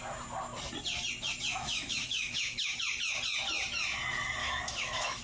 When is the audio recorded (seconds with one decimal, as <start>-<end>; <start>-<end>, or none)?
0.0-1.5; 2.8-4.4